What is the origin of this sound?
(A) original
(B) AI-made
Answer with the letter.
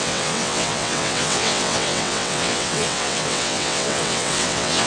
B